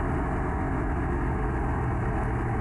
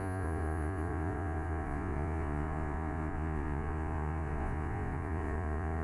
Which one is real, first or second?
first